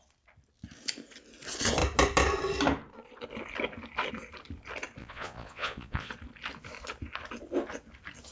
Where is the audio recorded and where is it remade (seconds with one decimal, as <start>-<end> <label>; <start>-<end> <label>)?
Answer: 0.0-5.0 recorded; 5.0-6.1 remade; 6.1-8.3 recorded